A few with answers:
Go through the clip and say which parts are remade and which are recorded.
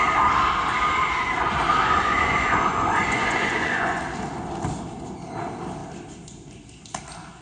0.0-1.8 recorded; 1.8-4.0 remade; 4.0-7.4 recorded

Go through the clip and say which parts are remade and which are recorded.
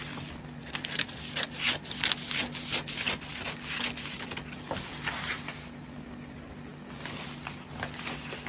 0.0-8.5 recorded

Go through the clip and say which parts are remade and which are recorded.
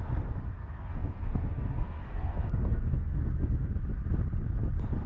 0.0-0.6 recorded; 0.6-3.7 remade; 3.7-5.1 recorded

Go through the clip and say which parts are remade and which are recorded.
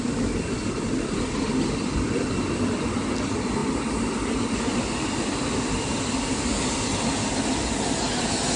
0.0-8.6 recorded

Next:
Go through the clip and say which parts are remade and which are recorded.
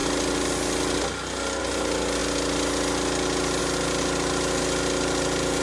0.0-5.6 recorded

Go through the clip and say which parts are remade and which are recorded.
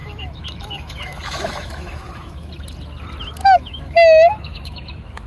0.0-2.5 remade; 2.5-3.4 recorded; 3.4-5.3 remade